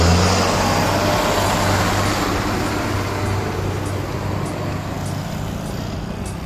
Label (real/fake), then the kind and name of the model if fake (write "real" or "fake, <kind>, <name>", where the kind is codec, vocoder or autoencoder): real